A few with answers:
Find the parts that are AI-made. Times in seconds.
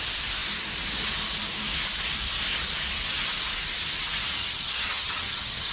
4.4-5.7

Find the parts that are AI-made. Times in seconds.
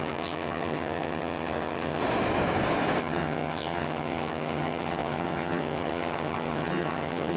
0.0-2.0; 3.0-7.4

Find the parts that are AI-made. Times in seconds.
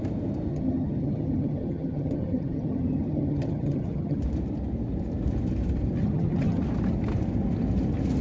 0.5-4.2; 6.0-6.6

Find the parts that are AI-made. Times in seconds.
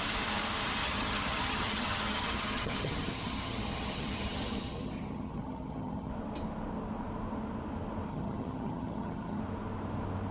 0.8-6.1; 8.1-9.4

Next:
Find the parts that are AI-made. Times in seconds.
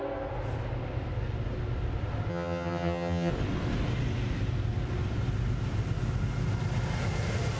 2.3-3.3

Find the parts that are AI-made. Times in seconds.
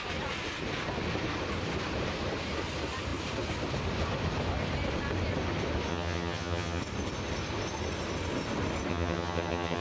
5.9-6.8; 8.9-9.8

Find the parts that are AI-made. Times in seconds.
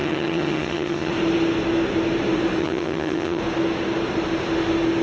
0.0-1.1; 2.6-3.4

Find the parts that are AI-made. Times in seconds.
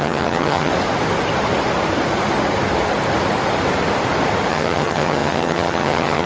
0.0-0.7; 4.5-6.3